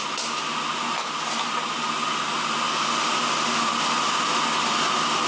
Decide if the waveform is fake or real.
real